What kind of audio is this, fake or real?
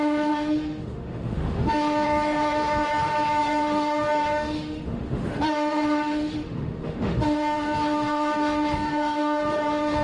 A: fake